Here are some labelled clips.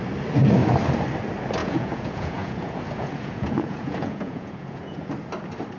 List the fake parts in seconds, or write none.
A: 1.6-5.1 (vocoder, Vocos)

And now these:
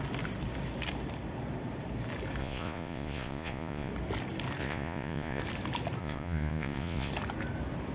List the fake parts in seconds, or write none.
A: 2.4-3.9 (vocoder, Vocos); 4.6-5.4; 6.0-7.1

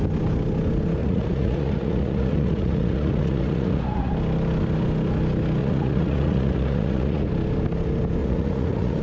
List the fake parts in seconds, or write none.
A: 1.0-4.1 (vocoder, Vocos); 5.6-7.3; 8.2-9.0